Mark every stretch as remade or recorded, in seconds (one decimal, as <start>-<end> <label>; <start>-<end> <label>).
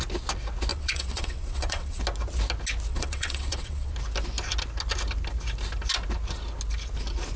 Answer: 0.0-0.7 recorded; 0.7-2.0 remade; 2.0-2.9 recorded; 2.9-3.9 remade; 3.9-7.4 recorded